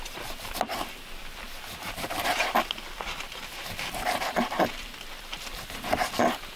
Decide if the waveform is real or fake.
fake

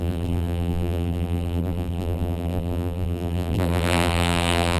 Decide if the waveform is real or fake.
fake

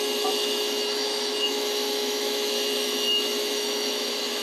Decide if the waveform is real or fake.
fake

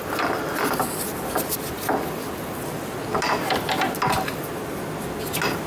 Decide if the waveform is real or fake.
real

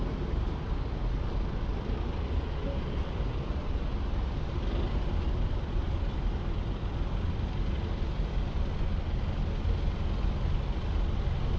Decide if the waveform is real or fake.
real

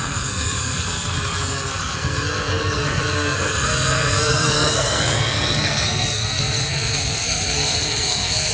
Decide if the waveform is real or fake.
fake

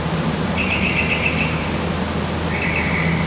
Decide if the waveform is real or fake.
real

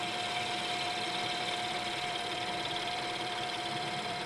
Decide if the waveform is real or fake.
fake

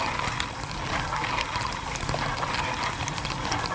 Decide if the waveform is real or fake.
real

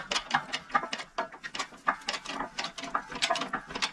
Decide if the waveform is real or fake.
real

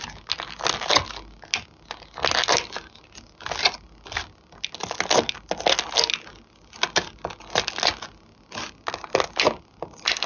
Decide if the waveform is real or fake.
real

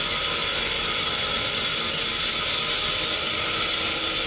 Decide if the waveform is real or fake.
real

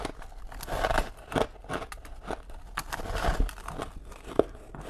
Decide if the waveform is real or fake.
real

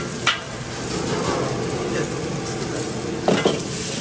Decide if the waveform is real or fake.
real